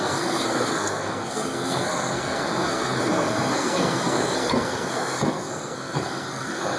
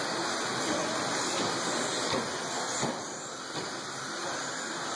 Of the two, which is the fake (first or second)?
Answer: first